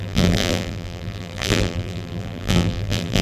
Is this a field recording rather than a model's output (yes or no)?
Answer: no